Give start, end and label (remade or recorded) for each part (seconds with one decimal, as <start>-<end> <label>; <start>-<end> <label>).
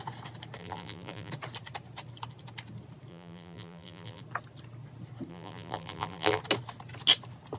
0.0-0.6 recorded; 0.6-1.3 remade; 1.3-3.1 recorded; 3.1-4.2 remade; 4.2-5.3 recorded; 5.3-6.4 remade; 6.4-7.6 recorded